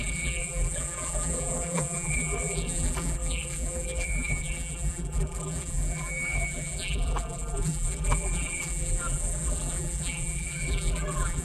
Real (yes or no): no